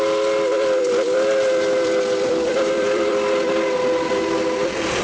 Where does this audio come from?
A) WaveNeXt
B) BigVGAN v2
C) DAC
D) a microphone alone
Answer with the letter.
B